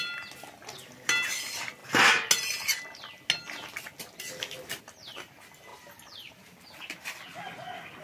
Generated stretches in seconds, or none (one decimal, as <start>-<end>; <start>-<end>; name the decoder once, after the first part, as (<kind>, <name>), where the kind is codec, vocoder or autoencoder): none